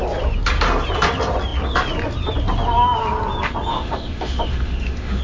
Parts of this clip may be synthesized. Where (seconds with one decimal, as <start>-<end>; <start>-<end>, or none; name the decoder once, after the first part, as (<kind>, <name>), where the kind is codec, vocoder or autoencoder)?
3.7-5.2 (autoencoder, DAC-VAE)